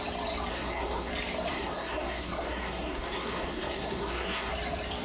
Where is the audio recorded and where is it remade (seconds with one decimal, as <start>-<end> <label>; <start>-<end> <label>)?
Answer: 0.0-0.5 recorded; 0.5-1.1 remade; 1.1-1.5 recorded; 1.5-4.5 remade; 4.5-5.0 recorded